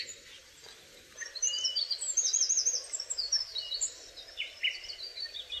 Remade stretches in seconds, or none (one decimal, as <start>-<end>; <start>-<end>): 0.4-2.4